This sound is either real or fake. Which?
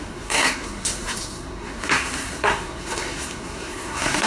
fake